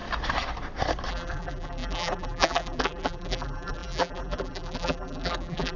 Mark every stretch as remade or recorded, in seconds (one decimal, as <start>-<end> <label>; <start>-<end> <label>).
0.0-1.1 recorded; 1.1-5.8 remade